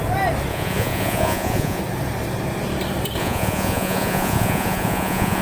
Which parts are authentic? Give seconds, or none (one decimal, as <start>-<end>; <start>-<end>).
0.0-0.5; 1.8-3.2